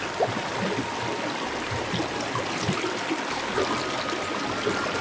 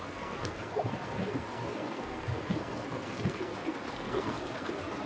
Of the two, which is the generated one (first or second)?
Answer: second